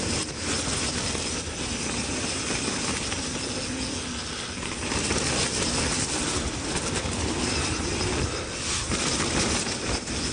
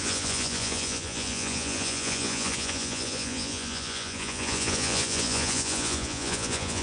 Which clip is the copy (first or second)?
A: second